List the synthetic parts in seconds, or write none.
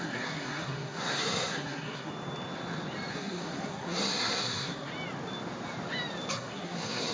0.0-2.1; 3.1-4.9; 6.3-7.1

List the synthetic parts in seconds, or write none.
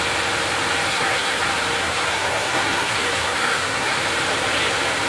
0.9-1.4; 1.8-4.0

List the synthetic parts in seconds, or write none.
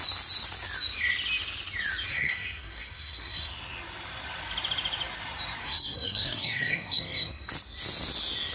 2.1-3.5; 5.6-7.0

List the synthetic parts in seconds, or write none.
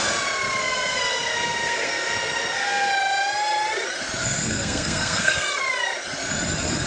0.6-2.9; 4.2-5.6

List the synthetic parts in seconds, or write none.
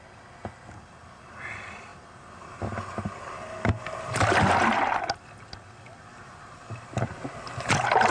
none